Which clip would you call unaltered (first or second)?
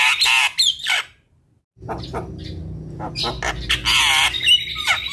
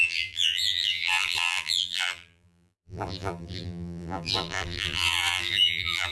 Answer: first